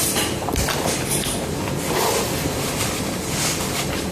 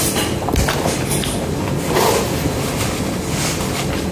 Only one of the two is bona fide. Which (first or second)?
second